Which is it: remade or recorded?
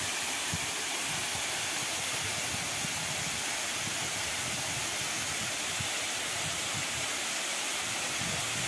recorded